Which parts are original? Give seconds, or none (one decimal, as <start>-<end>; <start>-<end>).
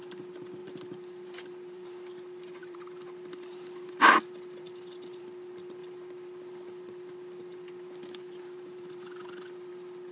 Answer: 0.0-0.6; 2.1-2.6; 5.2-5.8; 9.7-10.1